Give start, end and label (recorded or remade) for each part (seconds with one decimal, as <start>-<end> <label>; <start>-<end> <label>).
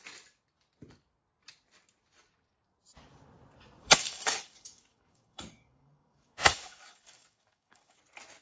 0.0-3.8 recorded; 3.8-8.0 remade; 8.0-8.4 recorded